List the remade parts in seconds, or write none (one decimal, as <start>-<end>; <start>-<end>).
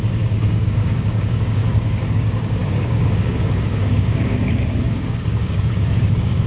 0.0-6.5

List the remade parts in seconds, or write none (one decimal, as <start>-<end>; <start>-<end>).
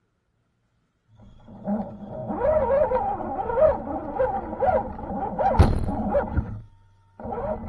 none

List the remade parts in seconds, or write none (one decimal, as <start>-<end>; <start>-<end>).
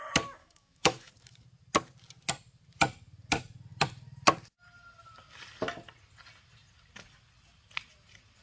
0.4-1.1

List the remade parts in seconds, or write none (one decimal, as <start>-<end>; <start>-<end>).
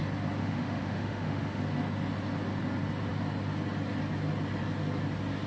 0.4-1.6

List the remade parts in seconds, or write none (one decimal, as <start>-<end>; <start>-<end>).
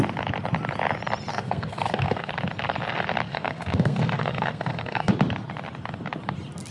1.3-2.3; 3.3-5.1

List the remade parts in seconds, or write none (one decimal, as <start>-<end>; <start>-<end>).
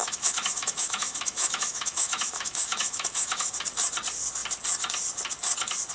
0.0-3.5